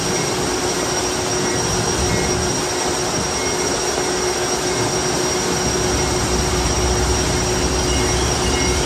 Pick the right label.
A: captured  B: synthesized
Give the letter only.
A